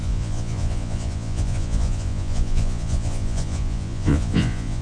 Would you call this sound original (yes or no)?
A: no